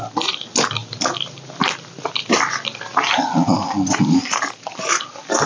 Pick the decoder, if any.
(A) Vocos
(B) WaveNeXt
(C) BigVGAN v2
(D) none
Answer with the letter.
D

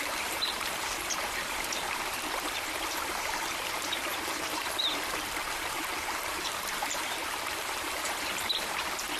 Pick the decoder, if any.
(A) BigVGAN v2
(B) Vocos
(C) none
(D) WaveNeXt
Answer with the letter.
A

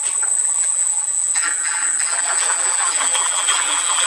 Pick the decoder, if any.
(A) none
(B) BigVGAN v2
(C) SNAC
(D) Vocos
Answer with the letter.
B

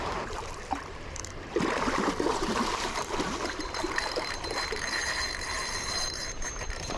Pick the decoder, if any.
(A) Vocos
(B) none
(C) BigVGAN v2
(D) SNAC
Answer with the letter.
C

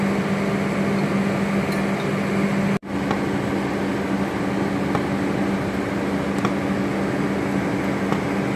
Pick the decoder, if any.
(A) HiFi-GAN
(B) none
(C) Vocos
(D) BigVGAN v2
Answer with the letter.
B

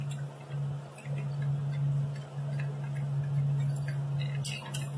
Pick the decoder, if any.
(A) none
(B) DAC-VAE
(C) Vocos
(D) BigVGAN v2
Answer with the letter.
A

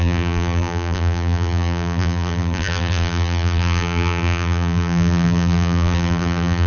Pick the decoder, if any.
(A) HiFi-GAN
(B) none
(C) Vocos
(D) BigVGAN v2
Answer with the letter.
D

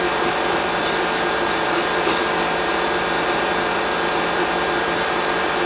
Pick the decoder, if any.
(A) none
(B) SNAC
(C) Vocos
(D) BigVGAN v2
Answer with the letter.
D